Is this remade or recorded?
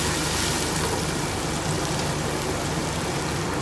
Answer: recorded